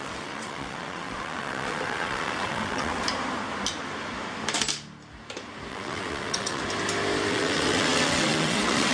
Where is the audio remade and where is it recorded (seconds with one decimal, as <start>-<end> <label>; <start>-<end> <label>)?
0.0-3.0 remade; 3.0-5.7 recorded; 5.7-6.6 remade; 6.6-7.3 recorded; 7.3-8.9 remade